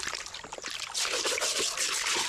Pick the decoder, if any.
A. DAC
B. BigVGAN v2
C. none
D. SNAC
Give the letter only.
B